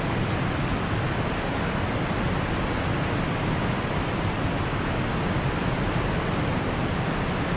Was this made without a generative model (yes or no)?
yes